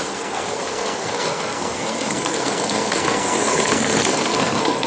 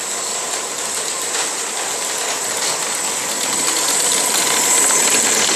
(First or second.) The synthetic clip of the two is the first